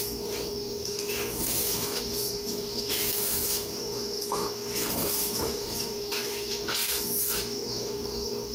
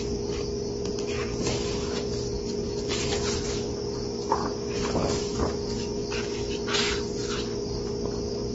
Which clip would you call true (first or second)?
second